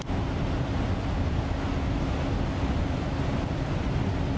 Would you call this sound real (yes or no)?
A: yes